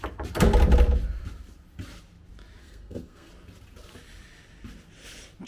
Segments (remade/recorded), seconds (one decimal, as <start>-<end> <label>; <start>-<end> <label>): 0.0-2.6 recorded; 2.6-3.3 remade; 3.3-5.5 recorded